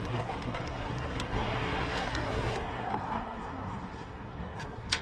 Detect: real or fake fake